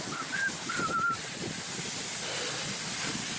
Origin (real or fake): real